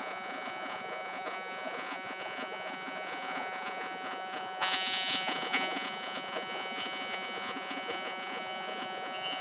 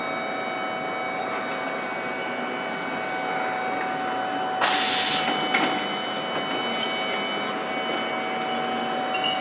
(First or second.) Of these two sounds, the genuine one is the second